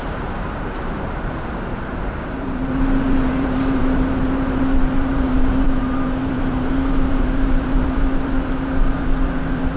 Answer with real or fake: fake